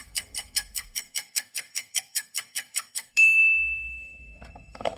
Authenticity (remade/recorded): remade